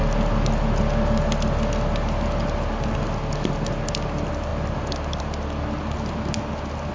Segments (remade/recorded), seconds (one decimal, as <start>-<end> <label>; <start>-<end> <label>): 0.0-6.9 recorded